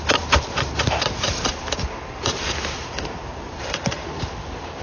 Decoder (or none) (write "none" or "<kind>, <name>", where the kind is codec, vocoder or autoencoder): vocoder, BigVGAN v2